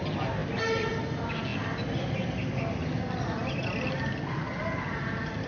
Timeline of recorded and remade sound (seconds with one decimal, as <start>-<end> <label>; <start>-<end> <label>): 0.0-5.5 recorded